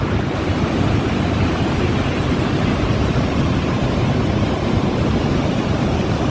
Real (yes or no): yes